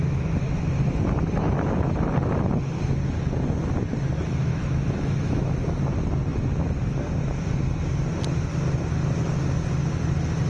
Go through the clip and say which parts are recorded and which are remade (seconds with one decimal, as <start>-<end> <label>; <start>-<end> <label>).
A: 0.0-4.5 recorded; 4.5-5.8 remade; 5.8-10.5 recorded

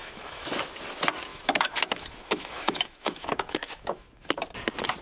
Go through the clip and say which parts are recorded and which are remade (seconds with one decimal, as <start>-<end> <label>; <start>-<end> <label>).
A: 0.0-0.5 remade; 0.5-1.3 recorded; 1.3-4.3 remade; 4.3-5.0 recorded

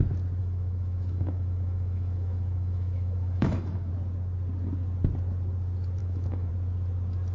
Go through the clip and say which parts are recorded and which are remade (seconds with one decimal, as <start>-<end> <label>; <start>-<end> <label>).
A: 0.0-0.4 recorded; 0.4-3.9 remade; 3.9-6.0 recorded; 6.0-6.5 remade; 6.5-7.3 recorded

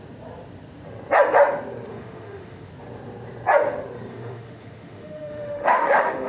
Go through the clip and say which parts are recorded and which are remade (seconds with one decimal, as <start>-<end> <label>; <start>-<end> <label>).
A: 0.0-1.9 recorded; 1.9-2.7 remade; 2.7-4.1 recorded; 4.1-6.3 remade